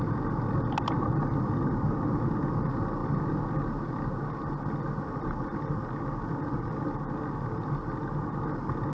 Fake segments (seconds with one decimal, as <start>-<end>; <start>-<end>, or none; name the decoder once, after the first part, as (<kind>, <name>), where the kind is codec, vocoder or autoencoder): none